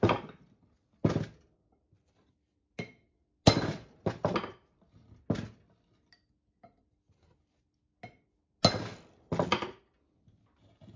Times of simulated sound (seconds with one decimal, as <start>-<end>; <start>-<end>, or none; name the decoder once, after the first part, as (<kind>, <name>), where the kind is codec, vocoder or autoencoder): none